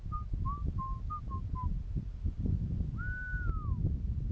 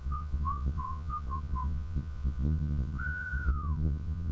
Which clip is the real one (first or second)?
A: first